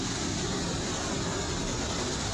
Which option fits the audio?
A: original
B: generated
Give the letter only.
A